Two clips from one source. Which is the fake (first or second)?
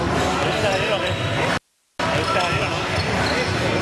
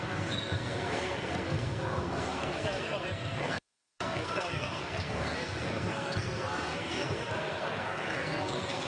second